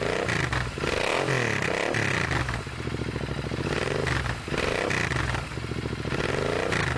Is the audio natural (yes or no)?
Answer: yes